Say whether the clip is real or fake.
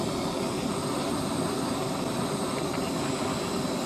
real